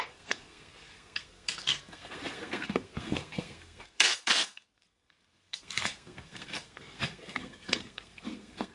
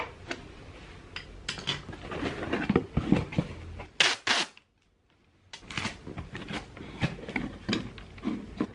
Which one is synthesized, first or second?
first